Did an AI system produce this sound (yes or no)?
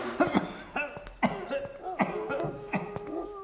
no